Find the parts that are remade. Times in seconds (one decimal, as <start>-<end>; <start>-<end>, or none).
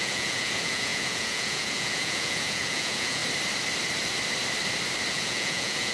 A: 0.0-3.2; 5.1-5.9